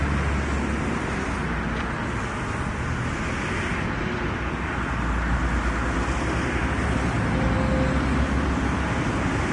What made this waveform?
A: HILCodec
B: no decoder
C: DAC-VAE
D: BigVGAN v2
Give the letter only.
B